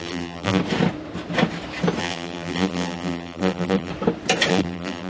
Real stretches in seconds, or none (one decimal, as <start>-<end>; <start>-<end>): 0.6-2.0; 3.9-4.5